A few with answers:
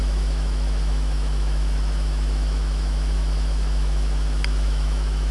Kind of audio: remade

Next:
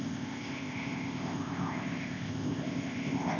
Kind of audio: remade